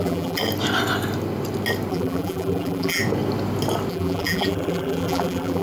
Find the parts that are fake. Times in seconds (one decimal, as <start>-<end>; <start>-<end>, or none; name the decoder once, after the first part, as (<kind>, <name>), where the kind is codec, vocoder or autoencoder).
0.0-0.4 (vocoder, BigVGAN v2); 1.9-3.0; 3.9-5.6